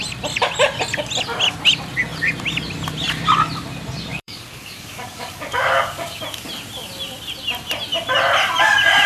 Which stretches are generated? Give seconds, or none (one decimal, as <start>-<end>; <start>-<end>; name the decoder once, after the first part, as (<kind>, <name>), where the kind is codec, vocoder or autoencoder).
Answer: 4.1-6.2 (codec, DAC)